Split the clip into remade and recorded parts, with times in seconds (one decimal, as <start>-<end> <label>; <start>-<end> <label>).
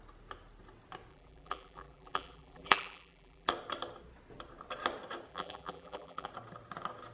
0.0-1.1 recorded; 1.1-3.5 remade; 3.5-5.3 recorded; 5.3-6.3 remade; 6.3-7.1 recorded